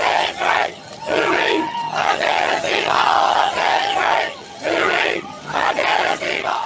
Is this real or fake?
fake